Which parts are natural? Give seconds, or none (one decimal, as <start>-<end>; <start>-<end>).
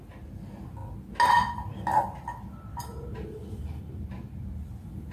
0.0-5.1